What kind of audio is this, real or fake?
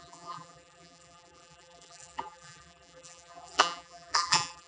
fake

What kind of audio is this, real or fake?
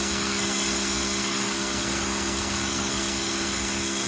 fake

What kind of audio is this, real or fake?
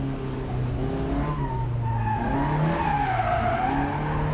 real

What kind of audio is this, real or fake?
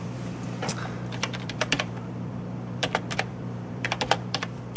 fake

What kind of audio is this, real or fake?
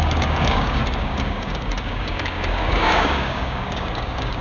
fake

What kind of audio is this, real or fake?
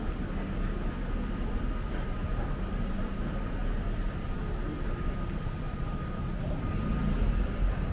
real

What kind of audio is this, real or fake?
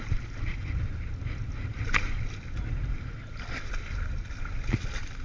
real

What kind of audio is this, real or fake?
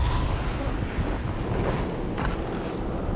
real